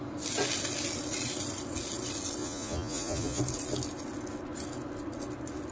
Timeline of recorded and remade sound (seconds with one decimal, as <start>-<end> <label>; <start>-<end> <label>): 0.0-2.4 recorded; 2.4-3.4 remade; 3.4-5.7 recorded